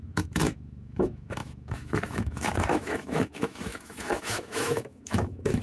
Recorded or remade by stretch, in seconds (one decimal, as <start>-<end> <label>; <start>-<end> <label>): 0.0-5.6 remade